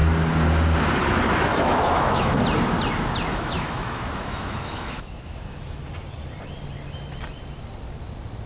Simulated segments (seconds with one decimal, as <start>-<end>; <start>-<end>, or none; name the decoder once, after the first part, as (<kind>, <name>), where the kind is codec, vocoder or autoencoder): 1.5-2.4 (autoencoder, DAC-VAE); 3.3-5.8

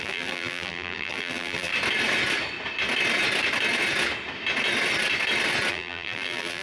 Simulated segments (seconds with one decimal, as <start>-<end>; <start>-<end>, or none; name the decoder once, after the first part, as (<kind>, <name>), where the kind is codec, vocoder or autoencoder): 0.0-1.7 (vocoder, BigVGAN v2); 5.7-6.6

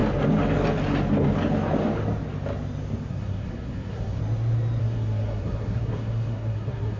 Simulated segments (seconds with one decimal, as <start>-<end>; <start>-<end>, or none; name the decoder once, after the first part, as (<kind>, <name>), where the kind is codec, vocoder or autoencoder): 3.1-4.2 (codec, SNAC); 4.8-7.0